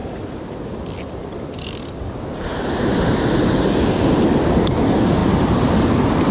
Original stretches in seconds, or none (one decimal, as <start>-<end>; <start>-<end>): 3.8-5.2; 5.7-6.3